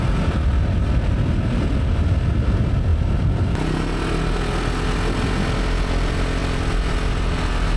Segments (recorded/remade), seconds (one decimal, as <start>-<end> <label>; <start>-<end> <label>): 0.0-7.8 recorded